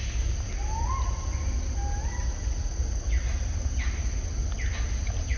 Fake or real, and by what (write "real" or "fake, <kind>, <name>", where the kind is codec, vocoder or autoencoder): real